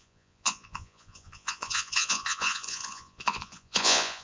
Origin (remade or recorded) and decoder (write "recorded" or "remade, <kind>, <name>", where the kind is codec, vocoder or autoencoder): remade, vocoder, Vocos